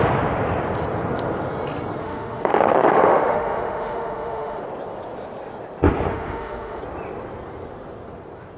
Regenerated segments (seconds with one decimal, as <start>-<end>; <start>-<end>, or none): 2.0-4.6; 6.1-6.8